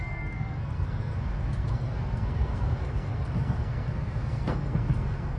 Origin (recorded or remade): remade